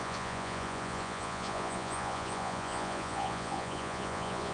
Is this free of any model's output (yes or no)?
no